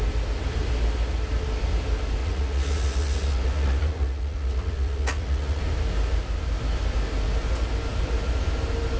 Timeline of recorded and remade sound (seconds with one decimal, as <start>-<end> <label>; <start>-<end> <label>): 0.0-2.2 recorded; 2.2-5.6 remade; 5.6-9.0 recorded